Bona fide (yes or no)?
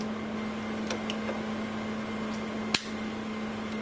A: yes